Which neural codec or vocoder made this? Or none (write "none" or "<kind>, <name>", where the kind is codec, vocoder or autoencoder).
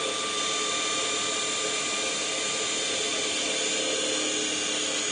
none